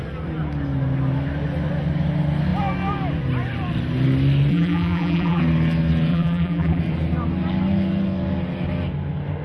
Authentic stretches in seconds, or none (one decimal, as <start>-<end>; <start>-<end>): 0.0-4.5; 5.4-6.1; 6.8-9.4